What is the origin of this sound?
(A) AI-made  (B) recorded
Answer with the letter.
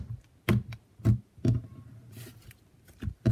B